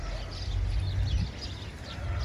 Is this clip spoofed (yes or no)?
no